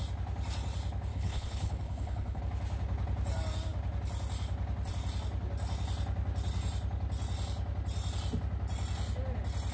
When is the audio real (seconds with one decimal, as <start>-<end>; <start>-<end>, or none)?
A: 0.0-1.1; 2.4-9.7